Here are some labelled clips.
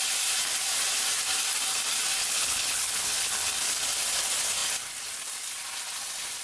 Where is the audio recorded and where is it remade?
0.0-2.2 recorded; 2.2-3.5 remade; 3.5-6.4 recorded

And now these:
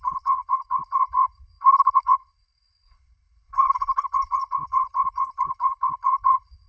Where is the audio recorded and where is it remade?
0.0-6.7 remade

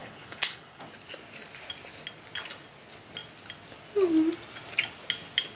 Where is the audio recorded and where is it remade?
0.0-0.8 remade; 0.8-5.6 recorded

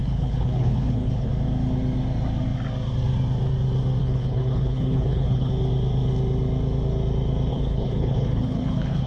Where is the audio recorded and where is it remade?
0.0-1.3 remade; 1.3-4.0 recorded; 4.0-5.5 remade; 5.5-7.5 recorded; 7.5-9.1 remade

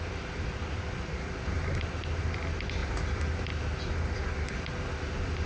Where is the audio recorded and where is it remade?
0.0-5.5 recorded

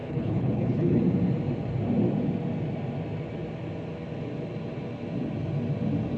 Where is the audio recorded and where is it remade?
0.0-1.0 remade; 1.0-6.2 recorded